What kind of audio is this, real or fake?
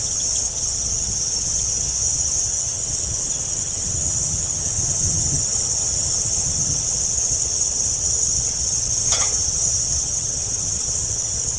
fake